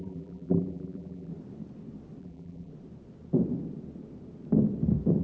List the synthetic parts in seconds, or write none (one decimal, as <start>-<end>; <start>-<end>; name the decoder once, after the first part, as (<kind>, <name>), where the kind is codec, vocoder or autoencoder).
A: 0.0-1.3 (vocoder, BigVGAN v2); 2.2-2.7

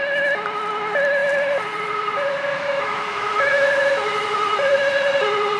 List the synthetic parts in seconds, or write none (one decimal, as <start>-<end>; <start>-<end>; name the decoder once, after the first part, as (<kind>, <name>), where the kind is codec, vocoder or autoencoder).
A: 2.5-3.7 (autoencoder, DAC-VAE)

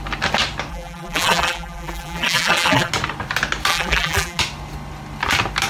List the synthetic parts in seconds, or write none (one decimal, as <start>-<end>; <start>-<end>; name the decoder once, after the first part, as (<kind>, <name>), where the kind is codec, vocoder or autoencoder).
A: 0.7-2.9 (vocoder, BigVGAN v2); 3.7-4.4

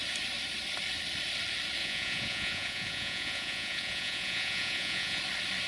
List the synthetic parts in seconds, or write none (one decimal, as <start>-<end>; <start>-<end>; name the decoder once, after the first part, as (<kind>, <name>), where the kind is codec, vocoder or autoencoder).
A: 1.8-5.2 (vocoder, Vocos)

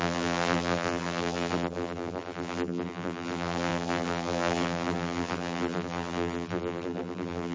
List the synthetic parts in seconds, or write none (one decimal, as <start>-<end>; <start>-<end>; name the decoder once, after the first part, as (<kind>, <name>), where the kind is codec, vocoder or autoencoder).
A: 0.0-7.5 (vocoder, BigVGAN v2)

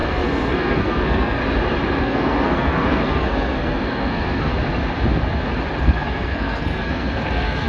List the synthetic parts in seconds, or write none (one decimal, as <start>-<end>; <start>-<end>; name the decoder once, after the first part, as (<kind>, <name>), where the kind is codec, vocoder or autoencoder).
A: 0.0-1.4 (codec, SNAC); 2.0-4.5; 5.8-7.7